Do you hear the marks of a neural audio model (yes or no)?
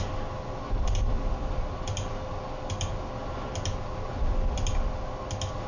no